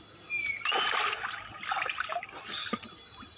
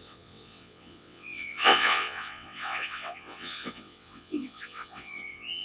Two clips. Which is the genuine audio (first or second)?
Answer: first